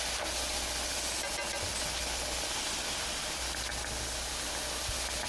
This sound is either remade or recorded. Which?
recorded